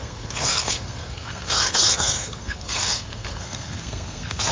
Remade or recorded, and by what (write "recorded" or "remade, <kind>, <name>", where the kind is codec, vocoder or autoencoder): remade, codec, SNAC